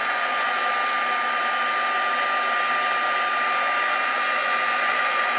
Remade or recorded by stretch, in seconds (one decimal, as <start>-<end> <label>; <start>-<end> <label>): 0.0-0.6 remade; 0.6-3.8 recorded; 3.8-5.4 remade